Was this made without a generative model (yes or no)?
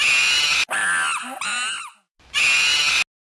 yes